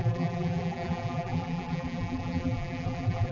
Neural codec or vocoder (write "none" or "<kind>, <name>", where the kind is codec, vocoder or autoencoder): vocoder, BigVGAN v2